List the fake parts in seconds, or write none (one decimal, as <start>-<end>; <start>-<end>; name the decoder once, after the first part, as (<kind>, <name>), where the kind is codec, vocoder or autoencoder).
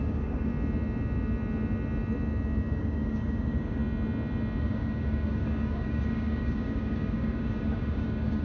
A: 0.0-0.5 (codec, DAC); 2.8-3.8; 4.6-8.4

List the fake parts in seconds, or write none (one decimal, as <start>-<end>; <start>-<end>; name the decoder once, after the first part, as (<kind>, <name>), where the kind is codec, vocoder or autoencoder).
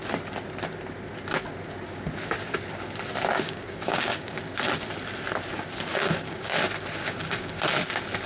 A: 3.3-4.4 (codec, DAC); 5.9-6.6; 7.0-7.6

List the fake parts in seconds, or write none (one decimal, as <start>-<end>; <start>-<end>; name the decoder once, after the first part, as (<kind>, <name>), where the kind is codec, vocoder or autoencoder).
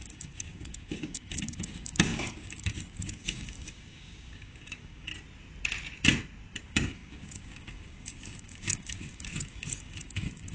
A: 0.0-5.1 (codec, DAC); 6.6-10.5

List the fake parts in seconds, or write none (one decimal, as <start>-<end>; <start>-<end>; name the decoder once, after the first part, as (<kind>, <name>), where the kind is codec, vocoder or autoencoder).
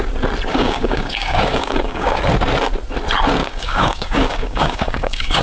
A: 0.5-2.2 (codec, DAC); 3.4-5.4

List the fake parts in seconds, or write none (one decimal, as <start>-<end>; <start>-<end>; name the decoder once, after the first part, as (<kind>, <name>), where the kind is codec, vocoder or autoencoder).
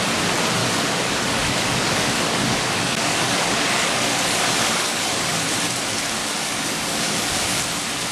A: 0.6-5.4 (codec, DAC); 6.2-7.6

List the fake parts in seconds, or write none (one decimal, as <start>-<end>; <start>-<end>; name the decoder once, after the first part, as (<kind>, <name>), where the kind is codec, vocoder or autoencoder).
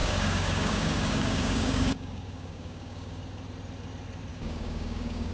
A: 0.0-3.2 (codec, DAC); 4.3-5.3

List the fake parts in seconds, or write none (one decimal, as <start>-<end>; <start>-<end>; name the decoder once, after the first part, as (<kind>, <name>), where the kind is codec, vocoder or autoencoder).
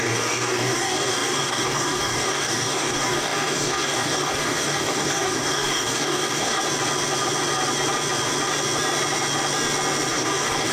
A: 0.0-6.6 (codec, DAC); 10.1-10.7